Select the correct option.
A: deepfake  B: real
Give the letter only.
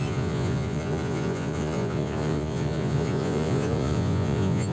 A